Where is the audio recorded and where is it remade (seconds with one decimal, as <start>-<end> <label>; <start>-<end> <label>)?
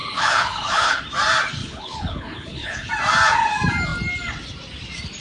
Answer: 0.0-1.0 remade; 1.0-1.6 recorded; 1.6-2.9 remade; 2.9-5.2 recorded